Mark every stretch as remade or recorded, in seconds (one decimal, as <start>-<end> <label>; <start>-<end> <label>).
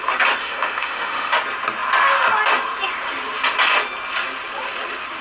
0.0-0.4 recorded; 0.4-1.4 remade; 1.4-5.2 recorded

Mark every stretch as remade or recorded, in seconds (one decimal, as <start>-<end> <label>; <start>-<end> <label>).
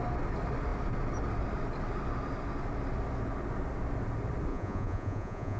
0.0-4.5 recorded; 4.5-5.6 remade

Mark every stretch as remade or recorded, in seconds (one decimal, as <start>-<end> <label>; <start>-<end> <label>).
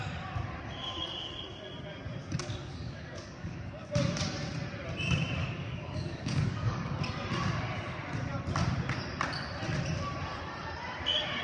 0.0-2.4 recorded; 2.4-3.9 remade; 3.9-5.4 recorded; 5.4-6.9 remade; 6.9-11.4 recorded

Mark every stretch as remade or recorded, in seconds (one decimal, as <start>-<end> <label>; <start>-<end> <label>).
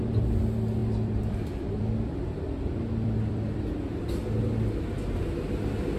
0.0-0.8 recorded; 0.8-4.4 remade; 4.4-6.0 recorded